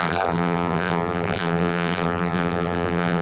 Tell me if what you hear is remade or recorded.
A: remade